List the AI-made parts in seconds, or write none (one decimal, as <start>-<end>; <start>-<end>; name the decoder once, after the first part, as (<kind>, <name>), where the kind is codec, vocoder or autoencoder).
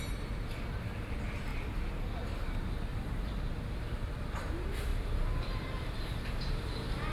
1.5-2.1 (vocoder, BigVGAN v2); 2.9-3.4; 4.9-6.4